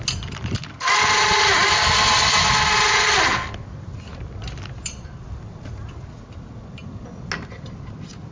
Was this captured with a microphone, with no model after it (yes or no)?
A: yes